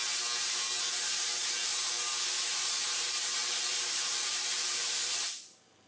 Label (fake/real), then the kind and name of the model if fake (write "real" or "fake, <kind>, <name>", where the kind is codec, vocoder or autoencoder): fake, vocoder, BigVGAN v2